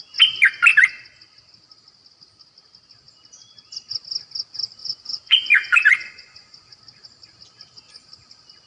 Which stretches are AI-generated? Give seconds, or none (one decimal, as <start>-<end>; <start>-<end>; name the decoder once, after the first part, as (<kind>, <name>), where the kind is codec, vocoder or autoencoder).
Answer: 4.8-6.8 (vocoder, Vocos)

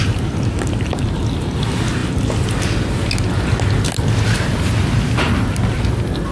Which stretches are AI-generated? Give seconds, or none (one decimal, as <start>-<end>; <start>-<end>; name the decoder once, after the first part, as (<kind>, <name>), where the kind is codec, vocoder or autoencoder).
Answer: none